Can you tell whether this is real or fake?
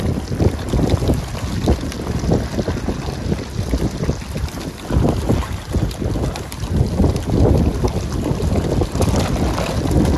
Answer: real